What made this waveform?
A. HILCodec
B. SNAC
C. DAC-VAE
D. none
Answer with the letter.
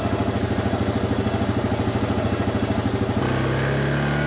D